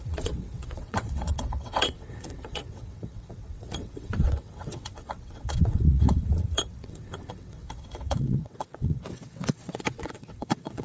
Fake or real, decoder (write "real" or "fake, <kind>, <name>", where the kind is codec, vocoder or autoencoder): fake, vocoder, WaveNeXt